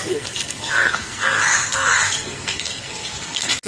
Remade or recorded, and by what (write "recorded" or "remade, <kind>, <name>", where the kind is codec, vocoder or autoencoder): remade, codec, SNAC